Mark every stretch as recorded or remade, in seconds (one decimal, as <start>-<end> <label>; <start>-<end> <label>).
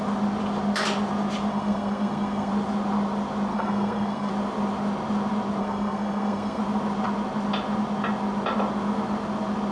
0.0-1.5 recorded; 1.5-2.5 remade; 2.5-3.5 recorded; 3.5-4.3 remade; 4.3-5.6 recorded; 5.6-6.6 remade; 6.6-9.7 recorded